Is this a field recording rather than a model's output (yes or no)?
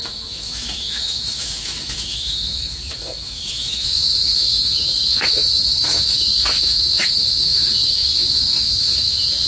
no